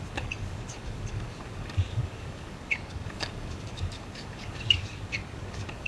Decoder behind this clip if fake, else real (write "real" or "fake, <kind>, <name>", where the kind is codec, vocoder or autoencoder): fake, codec, DAC